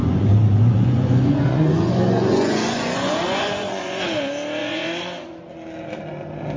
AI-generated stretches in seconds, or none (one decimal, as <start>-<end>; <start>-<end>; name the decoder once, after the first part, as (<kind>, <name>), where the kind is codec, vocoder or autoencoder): 0.0-4.0 (vocoder, Vocos); 4.6-5.4